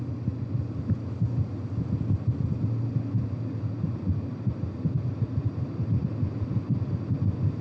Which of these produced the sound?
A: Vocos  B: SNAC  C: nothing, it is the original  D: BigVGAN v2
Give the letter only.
C